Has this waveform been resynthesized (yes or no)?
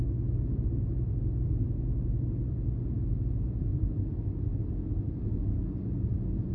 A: no